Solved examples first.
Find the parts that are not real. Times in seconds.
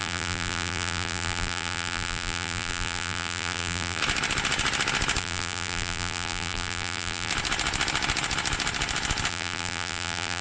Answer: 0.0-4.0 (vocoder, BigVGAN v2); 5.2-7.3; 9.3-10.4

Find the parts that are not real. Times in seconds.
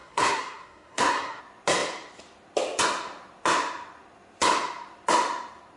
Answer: 0.0-1.4 (codec, SNAC)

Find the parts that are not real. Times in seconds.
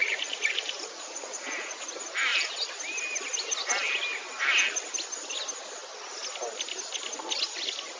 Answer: 0.0-1.9 (vocoder, Vocos)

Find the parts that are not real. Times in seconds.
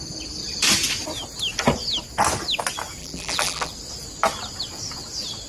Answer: 3.0-3.7 (vocoder, BigVGAN v2)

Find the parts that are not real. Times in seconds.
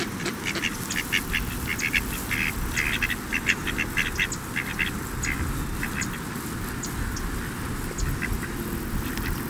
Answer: none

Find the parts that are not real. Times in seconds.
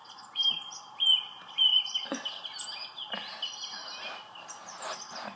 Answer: none